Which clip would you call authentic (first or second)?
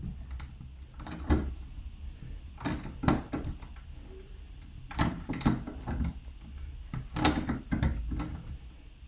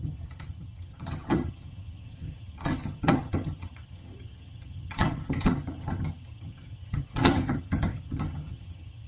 first